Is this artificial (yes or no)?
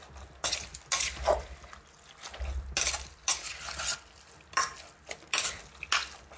no